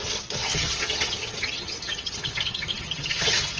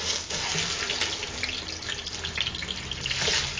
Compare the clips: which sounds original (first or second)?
second